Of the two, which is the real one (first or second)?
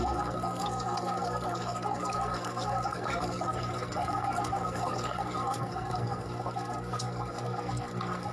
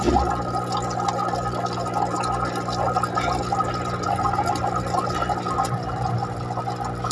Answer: second